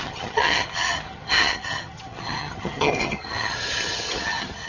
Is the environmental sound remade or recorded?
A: remade